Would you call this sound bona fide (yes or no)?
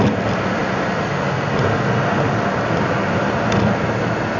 yes